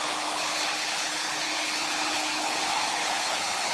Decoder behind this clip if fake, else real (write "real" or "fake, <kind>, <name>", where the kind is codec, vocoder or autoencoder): fake, codec, HILCodec